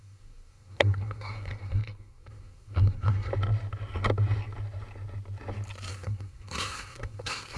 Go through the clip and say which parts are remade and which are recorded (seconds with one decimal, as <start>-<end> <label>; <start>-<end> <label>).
0.0-3.3 remade; 3.3-5.9 recorded; 5.9-7.6 remade